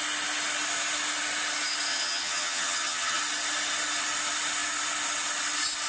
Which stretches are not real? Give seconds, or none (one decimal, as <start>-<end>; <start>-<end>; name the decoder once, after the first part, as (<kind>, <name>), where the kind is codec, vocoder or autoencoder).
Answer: 1.9-3.2 (vocoder, HiFi-GAN)